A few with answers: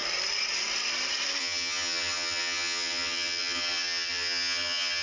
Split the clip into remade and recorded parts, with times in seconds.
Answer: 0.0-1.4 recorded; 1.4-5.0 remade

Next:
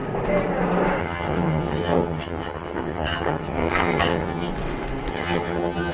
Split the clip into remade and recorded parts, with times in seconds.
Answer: 0.0-1.0 recorded; 1.0-4.5 remade; 4.5-5.1 recorded; 5.1-5.9 remade

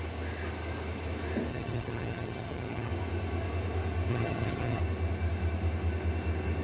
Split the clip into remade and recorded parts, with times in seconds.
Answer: 0.0-1.5 recorded; 1.5-2.9 remade; 2.9-4.1 recorded; 4.1-4.8 remade; 4.8-6.6 recorded

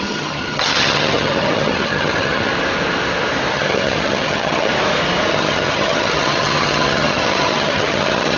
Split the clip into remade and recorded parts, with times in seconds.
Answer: 0.0-2.5 remade; 2.5-3.5 recorded; 3.5-4.7 remade; 4.7-5.3 recorded; 5.3-8.4 remade

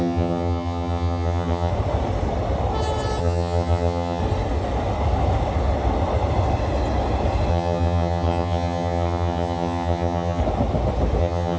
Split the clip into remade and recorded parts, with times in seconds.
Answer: 0.0-1.7 remade; 1.7-3.2 recorded; 3.2-4.2 remade; 4.2-7.5 recorded; 7.5-10.4 remade; 10.4-11.2 recorded; 11.2-11.6 remade